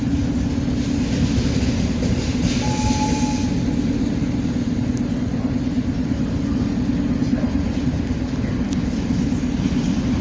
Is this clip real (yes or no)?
yes